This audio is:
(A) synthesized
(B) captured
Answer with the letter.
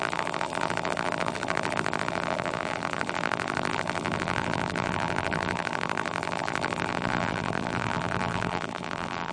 A